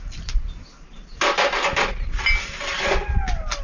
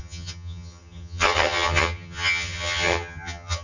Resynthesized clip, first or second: second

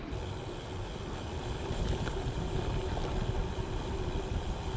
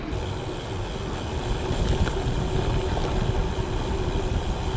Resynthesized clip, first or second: first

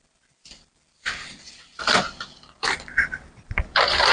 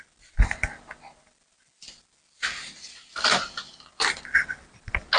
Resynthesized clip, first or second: first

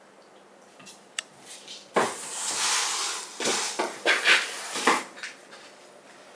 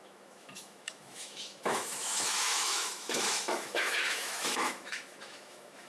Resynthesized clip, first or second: second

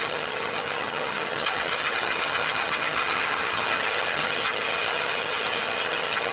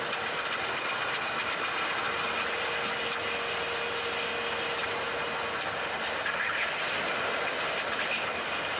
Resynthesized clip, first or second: first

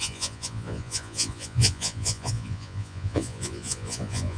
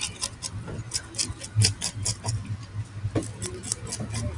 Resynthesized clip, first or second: first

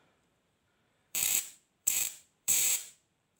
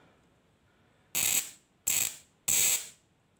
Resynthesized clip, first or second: first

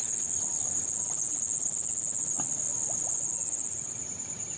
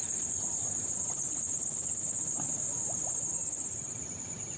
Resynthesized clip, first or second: second